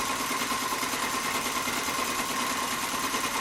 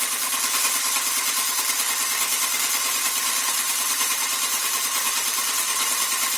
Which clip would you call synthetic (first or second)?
second